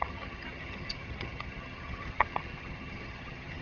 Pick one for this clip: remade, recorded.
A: remade